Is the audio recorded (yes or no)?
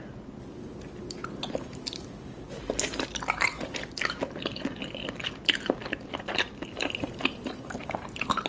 yes